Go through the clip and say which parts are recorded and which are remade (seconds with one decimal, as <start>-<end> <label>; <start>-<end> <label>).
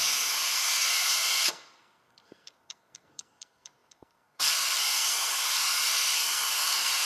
0.0-7.1 remade